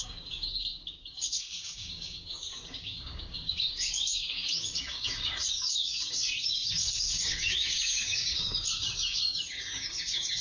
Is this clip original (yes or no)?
no